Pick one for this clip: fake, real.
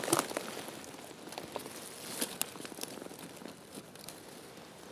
real